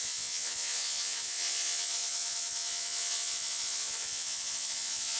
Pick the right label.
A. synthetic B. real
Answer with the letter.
A